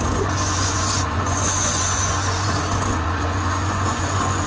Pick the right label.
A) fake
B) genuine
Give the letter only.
A